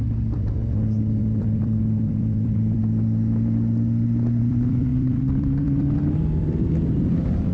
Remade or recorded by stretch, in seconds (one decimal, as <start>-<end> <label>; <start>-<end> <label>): 0.0-0.6 remade; 0.6-1.2 recorded; 1.2-2.8 remade; 2.8-4.4 recorded; 4.4-7.5 remade